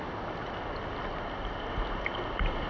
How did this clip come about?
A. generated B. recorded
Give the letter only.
B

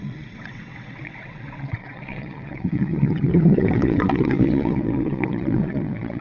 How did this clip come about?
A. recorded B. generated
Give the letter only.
B